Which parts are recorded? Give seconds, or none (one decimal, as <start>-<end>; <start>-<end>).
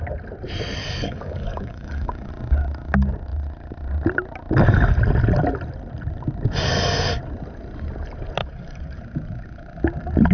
0.0-0.8; 2.3-8.4; 9.0-10.3